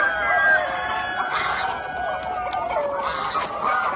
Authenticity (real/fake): real